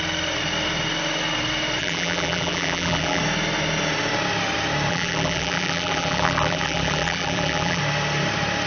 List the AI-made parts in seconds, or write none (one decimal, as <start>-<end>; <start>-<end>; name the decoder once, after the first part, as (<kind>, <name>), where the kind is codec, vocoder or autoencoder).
1.8-3.2 (vocoder, BigVGAN v2); 4.9-7.8